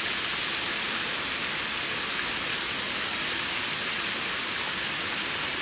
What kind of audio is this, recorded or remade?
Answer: recorded